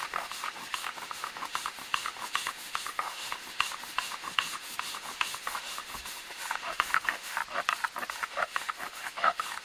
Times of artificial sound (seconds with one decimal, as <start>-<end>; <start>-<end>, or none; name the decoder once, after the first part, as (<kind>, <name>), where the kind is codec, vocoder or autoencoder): 0.0-7.4 (autoencoder, DAC-VAE); 8.1-9.6

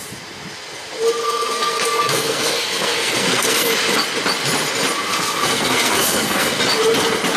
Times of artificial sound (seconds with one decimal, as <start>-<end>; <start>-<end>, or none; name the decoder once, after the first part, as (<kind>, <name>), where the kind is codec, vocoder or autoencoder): 1.2-3.7 (codec, SNAC); 5.1-6.6